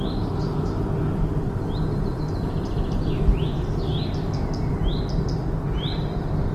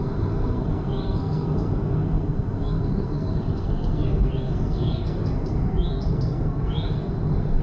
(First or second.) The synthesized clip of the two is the second